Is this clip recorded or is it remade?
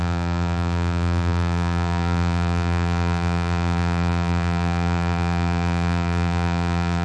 remade